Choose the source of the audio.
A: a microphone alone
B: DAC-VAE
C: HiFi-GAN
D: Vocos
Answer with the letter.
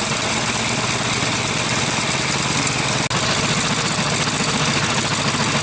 A